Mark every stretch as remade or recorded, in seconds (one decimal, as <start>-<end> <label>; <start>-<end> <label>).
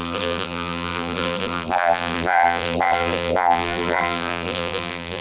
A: 0.0-5.2 remade